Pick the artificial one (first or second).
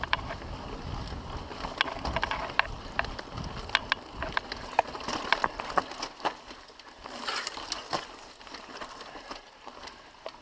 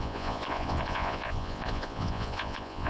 second